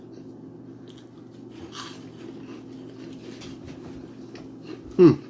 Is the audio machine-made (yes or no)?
no